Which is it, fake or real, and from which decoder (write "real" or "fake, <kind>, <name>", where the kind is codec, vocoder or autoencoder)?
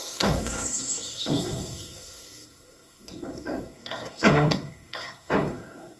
fake, codec, SNAC